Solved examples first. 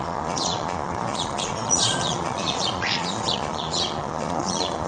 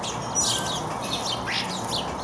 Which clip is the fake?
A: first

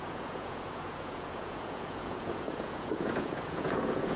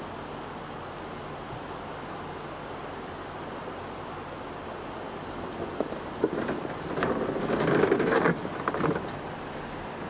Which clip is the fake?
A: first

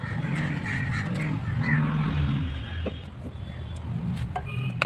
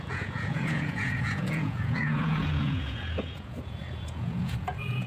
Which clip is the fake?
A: second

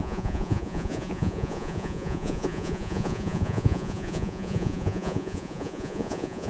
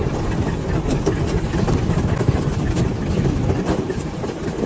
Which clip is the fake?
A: first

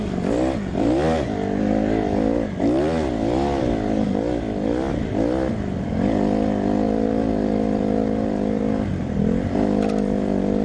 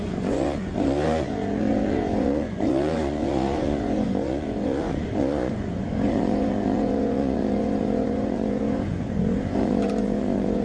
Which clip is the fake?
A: second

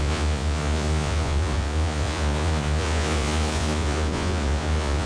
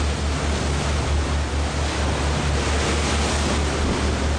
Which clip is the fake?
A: first